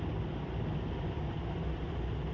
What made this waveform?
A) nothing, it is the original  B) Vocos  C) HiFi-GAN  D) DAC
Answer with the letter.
A